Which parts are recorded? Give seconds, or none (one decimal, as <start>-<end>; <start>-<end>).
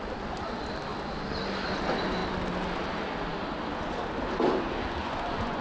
0.0-5.0